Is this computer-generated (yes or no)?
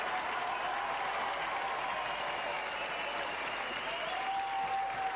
no